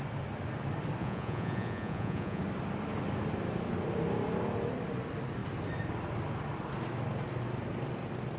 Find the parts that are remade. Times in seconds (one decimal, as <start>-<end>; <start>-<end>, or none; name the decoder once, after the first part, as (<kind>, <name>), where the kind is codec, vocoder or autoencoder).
1.0-2.4 (vocoder, Vocos)

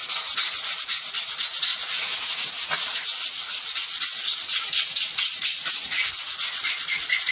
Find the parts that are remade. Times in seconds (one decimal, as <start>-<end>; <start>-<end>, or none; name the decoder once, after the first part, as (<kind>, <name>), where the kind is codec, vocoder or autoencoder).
0.0-0.8 (vocoder, Vocos); 1.7-6.1

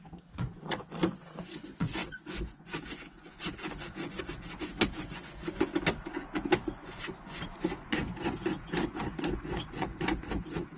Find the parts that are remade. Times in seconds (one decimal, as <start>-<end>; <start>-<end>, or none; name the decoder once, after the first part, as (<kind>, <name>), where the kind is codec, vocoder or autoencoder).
0.0-5.7 (vocoder, Vocos); 6.3-10.8

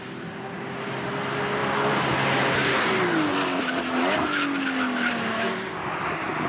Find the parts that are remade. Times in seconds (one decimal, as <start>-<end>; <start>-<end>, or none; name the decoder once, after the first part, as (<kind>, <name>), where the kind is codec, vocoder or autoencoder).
none

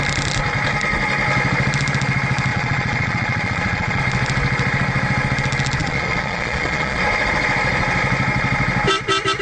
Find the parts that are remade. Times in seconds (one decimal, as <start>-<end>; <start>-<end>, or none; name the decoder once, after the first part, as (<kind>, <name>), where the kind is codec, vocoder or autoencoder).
2.5-4.0 (vocoder, Vocos); 5.8-7.0

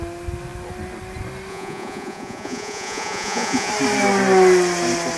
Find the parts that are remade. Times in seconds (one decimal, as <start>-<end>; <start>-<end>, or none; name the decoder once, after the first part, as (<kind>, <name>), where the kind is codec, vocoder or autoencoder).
1.5-3.7 (vocoder, Vocos)

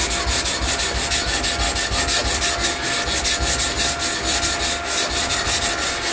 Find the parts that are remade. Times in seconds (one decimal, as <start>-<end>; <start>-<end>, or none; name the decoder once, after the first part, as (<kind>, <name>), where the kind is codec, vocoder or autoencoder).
none

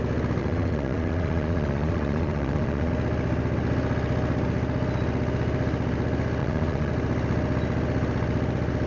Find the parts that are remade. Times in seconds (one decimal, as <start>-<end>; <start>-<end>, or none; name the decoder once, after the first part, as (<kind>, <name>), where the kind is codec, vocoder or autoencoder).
0.4-2.9 (vocoder, Vocos); 6.4-6.9